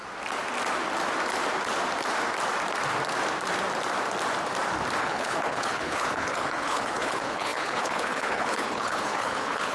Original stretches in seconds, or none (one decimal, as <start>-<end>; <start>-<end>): 0.0-5.0